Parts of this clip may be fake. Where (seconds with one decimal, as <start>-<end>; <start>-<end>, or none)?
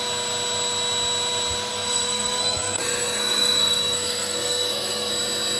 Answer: 1.7-5.1